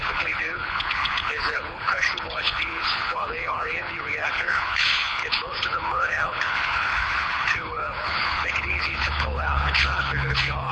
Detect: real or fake fake